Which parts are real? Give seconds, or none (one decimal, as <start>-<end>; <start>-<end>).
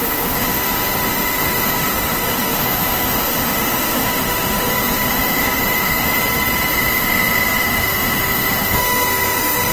6.2-6.7